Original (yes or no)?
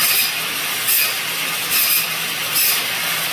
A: yes